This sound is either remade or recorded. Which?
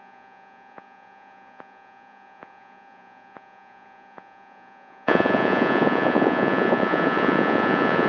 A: remade